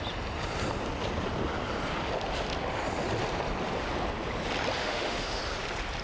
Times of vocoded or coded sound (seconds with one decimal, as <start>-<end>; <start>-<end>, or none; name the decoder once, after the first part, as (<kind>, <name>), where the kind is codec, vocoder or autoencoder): 4.8-5.4 (autoencoder, DAC-VAE)

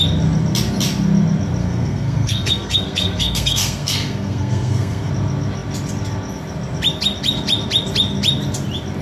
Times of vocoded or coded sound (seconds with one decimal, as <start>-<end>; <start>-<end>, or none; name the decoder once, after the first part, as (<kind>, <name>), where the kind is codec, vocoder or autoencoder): 1.6-5.1 (codec, SNAC)

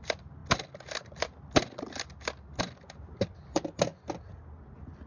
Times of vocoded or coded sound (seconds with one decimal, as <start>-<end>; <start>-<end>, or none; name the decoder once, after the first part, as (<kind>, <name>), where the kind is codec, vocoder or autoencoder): none

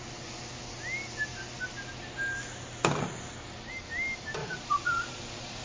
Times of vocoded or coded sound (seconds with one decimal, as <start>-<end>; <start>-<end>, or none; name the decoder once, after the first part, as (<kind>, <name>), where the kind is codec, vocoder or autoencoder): 4.4-5.6 (vocoder, Vocos)

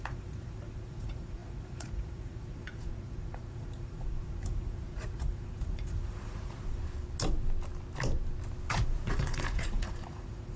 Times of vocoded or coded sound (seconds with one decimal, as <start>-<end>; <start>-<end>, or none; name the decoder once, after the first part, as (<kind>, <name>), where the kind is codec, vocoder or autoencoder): 0.0-6.8 (vocoder, Vocos); 8.7-10.6

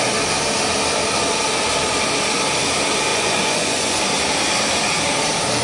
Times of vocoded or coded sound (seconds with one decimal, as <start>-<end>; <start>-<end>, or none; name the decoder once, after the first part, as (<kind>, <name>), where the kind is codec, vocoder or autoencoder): 3.1-4.0 (vocoder, Vocos)

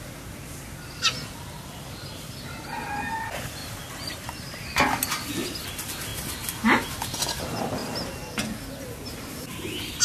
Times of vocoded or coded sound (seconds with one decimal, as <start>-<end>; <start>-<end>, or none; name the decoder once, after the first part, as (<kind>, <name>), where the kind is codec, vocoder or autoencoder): none